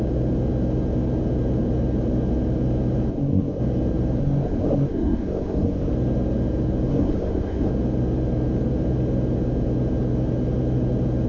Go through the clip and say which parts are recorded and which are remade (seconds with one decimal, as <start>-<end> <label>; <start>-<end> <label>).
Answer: 0.0-3.1 recorded; 3.1-3.6 remade; 3.6-4.2 recorded; 4.2-5.9 remade; 5.9-6.9 recorded; 6.9-7.7 remade; 7.7-11.3 recorded